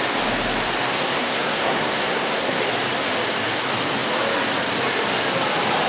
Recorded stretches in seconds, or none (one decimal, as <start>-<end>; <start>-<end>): 0.0-0.9; 2.6-5.9